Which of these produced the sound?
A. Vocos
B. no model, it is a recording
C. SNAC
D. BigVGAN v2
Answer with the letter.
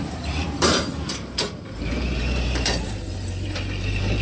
D